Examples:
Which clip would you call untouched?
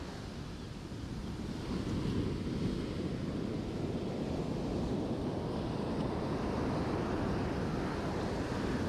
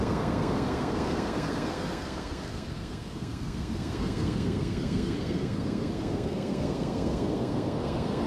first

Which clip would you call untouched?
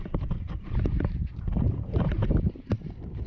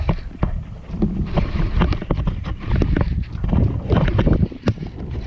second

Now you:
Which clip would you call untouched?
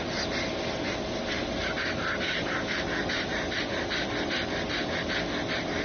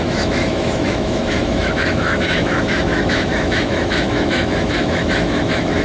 first